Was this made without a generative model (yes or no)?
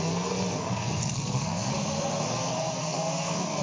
no